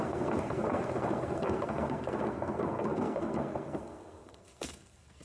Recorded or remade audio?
remade